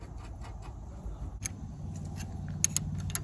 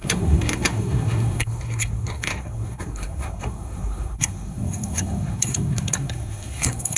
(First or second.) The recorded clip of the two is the first